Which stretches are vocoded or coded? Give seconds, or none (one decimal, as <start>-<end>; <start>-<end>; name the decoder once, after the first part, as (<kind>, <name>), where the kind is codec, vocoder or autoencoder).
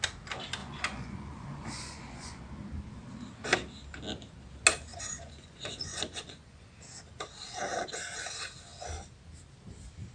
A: 0.6-2.4 (vocoder, Vocos); 4.9-6.7